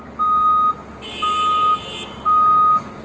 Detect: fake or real real